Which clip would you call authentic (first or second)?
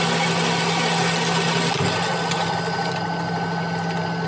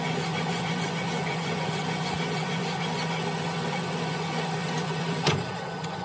first